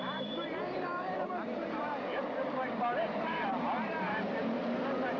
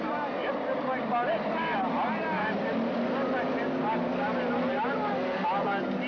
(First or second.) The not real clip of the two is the first